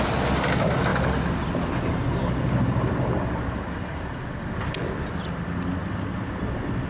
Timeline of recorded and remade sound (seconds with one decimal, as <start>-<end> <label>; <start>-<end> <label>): 0.0-6.9 recorded

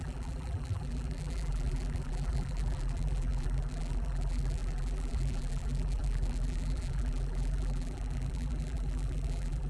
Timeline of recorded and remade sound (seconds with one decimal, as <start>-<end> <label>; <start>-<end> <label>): 0.0-9.7 remade

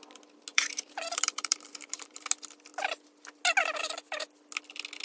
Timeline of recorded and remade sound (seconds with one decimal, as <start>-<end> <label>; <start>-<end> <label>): 0.0-0.5 recorded; 0.5-2.2 remade; 2.2-5.0 recorded

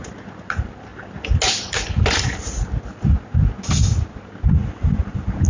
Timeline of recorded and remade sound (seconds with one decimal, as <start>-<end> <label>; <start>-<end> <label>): 0.0-5.5 recorded

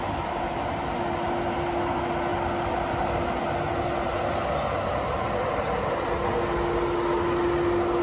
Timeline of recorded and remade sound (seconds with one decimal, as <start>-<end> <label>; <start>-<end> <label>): 0.0-8.0 recorded